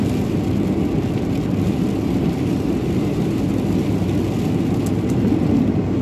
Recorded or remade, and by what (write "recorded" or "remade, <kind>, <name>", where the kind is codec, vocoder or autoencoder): recorded